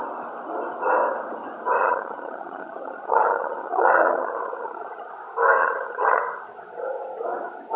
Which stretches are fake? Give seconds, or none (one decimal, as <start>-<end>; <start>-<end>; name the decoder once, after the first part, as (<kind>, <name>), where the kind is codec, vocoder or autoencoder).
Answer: 1.8-5.1 (vocoder, HiFi-GAN); 5.6-6.2